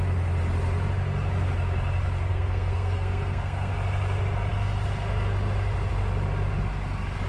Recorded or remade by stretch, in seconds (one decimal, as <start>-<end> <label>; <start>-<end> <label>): 0.0-2.3 recorded; 2.3-3.7 remade; 3.7-7.3 recorded